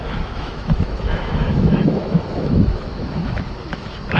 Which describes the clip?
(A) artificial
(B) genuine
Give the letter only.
A